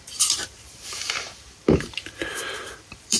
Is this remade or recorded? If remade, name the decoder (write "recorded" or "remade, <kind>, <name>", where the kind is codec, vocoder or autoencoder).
remade, vocoder, BigVGAN v2